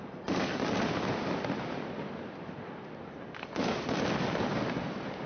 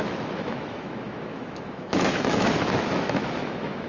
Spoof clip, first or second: second